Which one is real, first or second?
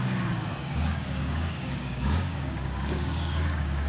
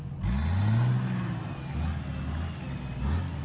second